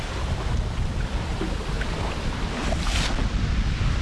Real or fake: real